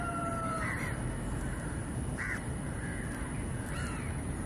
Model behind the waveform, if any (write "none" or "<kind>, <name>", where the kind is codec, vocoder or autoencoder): vocoder, BigVGAN v2